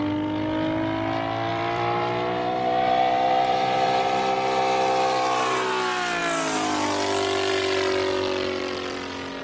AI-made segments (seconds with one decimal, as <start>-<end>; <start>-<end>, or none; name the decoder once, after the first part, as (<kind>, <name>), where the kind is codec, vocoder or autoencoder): 1.5-4.2 (vocoder, BigVGAN v2)